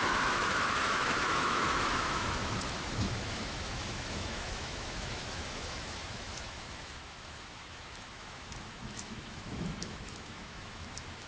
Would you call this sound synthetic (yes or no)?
yes